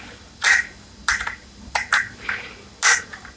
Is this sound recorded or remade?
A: recorded